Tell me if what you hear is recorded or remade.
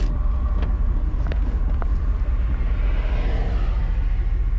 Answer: recorded